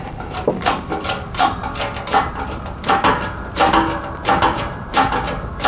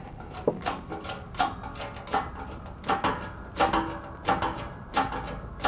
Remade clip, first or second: first